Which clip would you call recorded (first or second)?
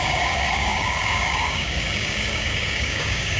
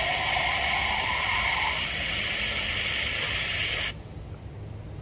second